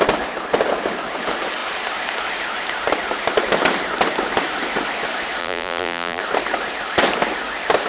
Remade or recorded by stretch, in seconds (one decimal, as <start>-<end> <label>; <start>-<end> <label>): 0.0-5.4 recorded; 5.4-6.2 remade; 6.2-7.9 recorded